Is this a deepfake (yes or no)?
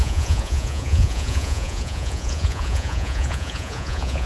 yes